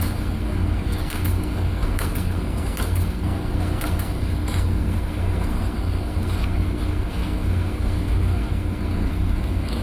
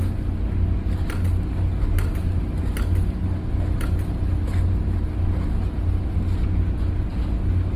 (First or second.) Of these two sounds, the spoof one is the first